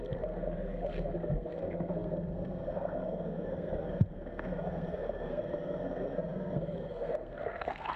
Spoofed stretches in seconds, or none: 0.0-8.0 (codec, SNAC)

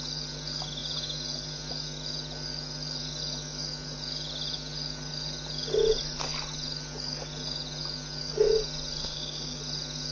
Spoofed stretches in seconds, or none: 9.0-9.6 (codec, SNAC)

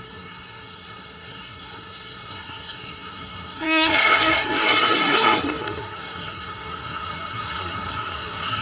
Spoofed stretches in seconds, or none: 0.0-8.6 (codec, SNAC)

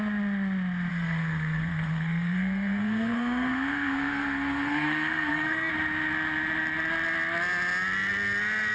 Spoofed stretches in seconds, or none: 0.9-5.7 (codec, SNAC)